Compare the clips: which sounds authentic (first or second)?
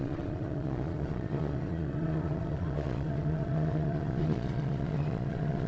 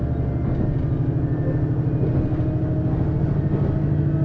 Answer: second